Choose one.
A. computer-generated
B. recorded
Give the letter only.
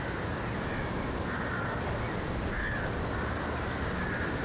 B